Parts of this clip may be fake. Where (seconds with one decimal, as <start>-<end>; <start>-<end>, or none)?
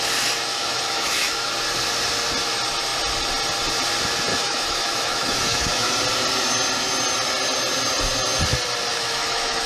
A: 0.5-1.5; 4.3-5.9; 8.9-9.7